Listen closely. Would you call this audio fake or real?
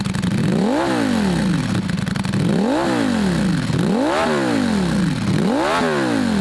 real